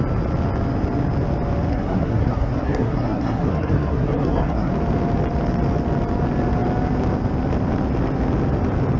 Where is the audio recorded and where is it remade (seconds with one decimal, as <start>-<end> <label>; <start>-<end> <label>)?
0.0-1.7 recorded; 1.7-4.7 remade; 4.7-9.0 recorded